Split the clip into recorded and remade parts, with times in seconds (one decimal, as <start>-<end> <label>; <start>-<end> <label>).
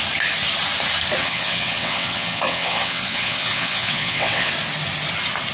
0.0-1.2 recorded; 1.2-4.5 remade; 4.5-5.5 recorded